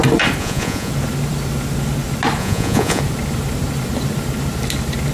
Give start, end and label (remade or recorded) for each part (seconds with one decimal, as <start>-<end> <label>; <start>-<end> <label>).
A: 0.0-0.4 recorded; 0.4-0.9 remade; 0.9-2.4 recorded; 2.4-3.0 remade; 3.0-5.1 recorded